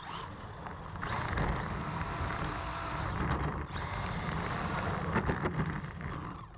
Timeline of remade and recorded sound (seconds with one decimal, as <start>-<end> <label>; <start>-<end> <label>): 0.0-3.5 recorded; 3.5-6.0 remade; 6.0-6.6 recorded